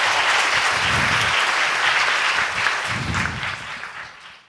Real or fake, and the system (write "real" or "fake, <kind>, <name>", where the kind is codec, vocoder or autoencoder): real